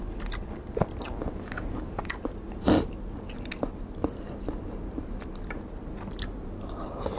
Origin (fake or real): real